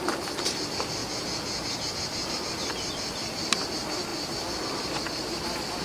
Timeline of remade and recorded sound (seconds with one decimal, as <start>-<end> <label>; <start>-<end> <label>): 0.0-1.0 recorded; 1.0-2.3 remade; 2.3-5.8 recorded